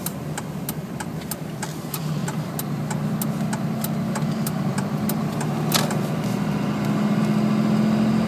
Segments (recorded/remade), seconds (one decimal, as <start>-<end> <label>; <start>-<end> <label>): 0.0-8.3 recorded